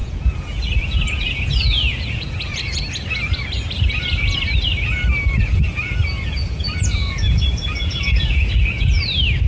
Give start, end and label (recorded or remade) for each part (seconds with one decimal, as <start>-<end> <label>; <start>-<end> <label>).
0.0-2.8 remade; 2.8-5.4 recorded; 5.4-9.0 remade; 9.0-9.5 recorded